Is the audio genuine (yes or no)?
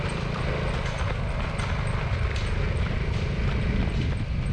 yes